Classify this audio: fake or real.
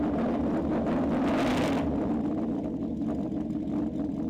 real